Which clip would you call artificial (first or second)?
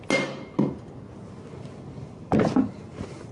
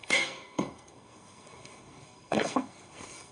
second